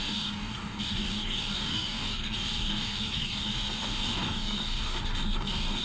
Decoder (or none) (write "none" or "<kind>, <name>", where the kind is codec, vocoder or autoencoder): codec, DAC